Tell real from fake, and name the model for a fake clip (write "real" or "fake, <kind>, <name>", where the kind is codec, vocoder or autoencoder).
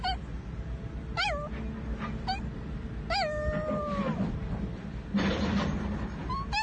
real